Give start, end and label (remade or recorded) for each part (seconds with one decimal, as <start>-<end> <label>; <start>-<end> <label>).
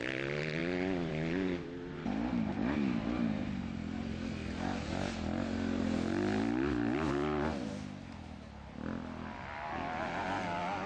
0.0-10.9 recorded